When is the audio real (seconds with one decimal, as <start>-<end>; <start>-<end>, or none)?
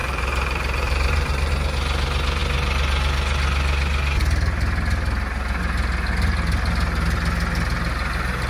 1.5-8.5